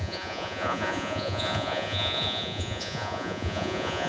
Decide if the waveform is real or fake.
fake